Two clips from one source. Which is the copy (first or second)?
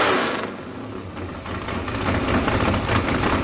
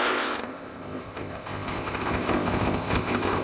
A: second